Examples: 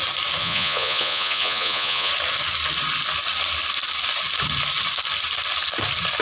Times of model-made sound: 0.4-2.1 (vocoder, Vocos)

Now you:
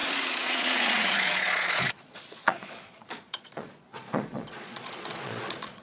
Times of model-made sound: 0.0-5.8 (vocoder, Vocos)

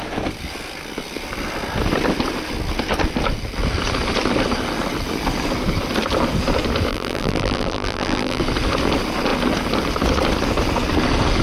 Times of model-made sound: 6.9-8.4 (vocoder, BigVGAN v2)